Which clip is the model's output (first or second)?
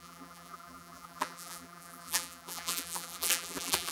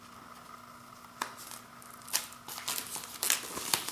first